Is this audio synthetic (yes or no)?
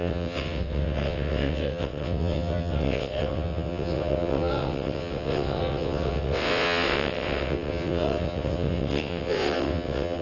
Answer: yes